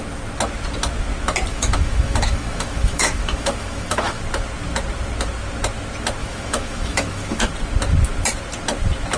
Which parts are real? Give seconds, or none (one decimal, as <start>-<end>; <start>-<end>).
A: 0.0-1.5; 4.2-6.2; 7.5-9.2